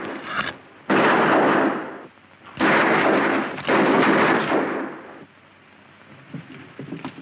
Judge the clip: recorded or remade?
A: recorded